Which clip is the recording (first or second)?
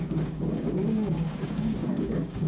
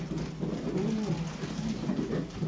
second